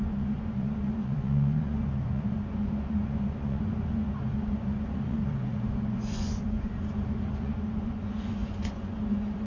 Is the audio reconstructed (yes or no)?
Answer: yes